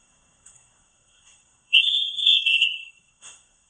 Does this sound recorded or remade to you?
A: remade